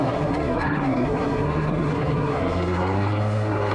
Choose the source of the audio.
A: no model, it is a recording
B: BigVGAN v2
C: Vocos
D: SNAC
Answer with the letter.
D